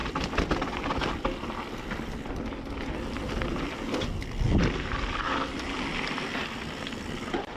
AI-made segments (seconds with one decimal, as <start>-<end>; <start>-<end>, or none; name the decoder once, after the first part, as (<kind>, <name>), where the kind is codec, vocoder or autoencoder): none